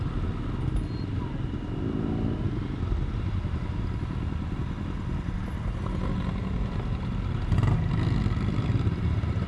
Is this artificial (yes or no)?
no